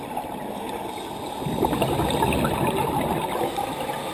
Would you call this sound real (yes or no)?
yes